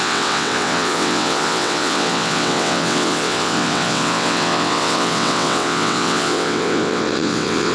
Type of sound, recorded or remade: remade